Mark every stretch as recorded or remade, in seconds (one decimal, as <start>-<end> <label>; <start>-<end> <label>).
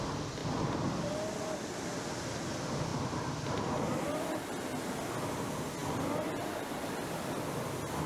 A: 0.0-0.4 recorded; 0.4-1.0 remade; 1.0-5.8 recorded; 5.8-6.6 remade; 6.6-8.1 recorded